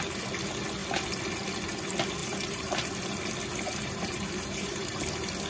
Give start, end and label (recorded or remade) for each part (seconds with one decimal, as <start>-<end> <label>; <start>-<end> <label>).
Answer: 0.0-2.2 recorded; 2.2-2.9 remade; 2.9-3.7 recorded; 3.7-5.1 remade; 5.1-5.5 recorded